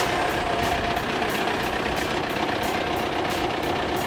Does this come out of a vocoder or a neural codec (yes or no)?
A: yes